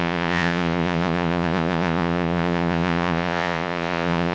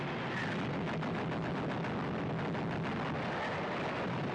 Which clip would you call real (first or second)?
second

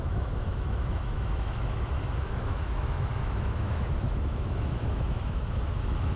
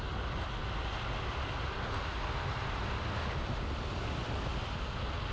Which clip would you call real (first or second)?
second